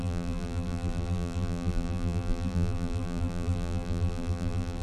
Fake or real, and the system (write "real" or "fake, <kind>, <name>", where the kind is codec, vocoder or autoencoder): fake, vocoder, BigVGAN v2